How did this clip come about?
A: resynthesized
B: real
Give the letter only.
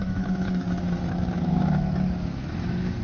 A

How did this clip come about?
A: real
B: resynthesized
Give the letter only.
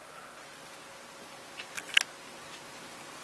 A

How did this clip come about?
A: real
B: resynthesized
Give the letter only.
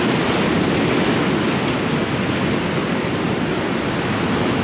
A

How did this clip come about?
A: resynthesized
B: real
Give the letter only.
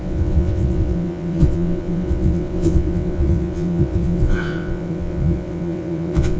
A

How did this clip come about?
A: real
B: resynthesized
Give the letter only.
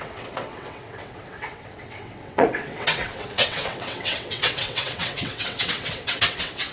B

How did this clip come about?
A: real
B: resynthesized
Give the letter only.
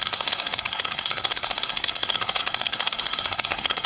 B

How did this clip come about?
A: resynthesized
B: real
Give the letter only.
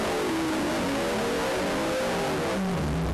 B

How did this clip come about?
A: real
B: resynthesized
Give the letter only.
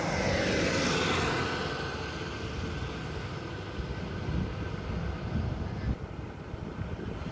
A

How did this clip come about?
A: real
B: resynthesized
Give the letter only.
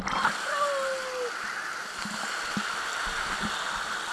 A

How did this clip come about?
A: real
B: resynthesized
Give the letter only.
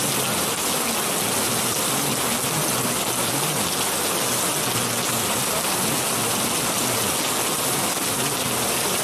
A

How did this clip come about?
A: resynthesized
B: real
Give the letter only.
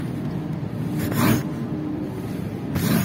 B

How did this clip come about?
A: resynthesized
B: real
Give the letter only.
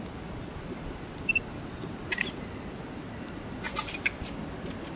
B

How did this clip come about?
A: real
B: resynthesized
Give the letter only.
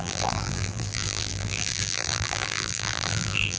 B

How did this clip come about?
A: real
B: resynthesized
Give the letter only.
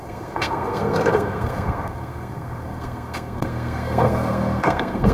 B